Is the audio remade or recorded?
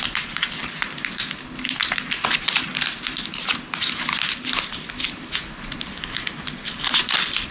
recorded